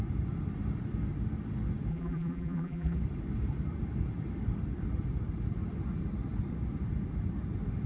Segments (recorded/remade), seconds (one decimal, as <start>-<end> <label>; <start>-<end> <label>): 0.0-1.9 recorded; 1.9-3.0 remade; 3.0-7.9 recorded